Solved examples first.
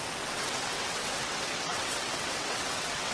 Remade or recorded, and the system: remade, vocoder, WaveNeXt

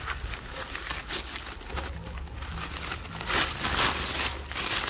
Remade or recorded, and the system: recorded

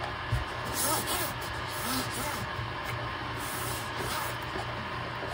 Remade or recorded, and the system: recorded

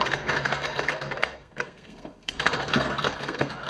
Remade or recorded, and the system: remade, codec, SNAC